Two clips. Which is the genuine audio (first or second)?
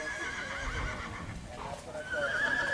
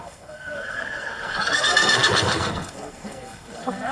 first